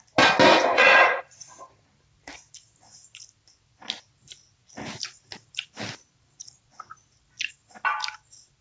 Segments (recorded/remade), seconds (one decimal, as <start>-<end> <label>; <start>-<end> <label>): 0.0-0.7 recorded; 0.7-1.9 remade; 1.9-8.6 recorded